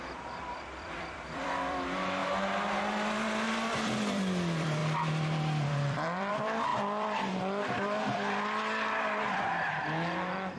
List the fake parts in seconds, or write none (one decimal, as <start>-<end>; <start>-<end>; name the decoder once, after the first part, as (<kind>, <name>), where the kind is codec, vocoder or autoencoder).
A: 0.0-2.2 (vocoder, BigVGAN v2); 2.9-10.6